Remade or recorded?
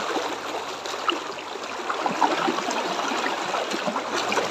recorded